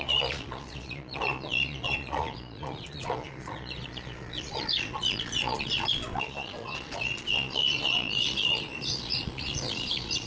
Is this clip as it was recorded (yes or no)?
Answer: no